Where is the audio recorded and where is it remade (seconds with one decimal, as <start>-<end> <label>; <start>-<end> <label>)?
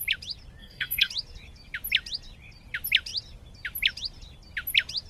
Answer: 0.0-0.6 recorded; 0.6-1.1 remade; 1.1-5.1 recorded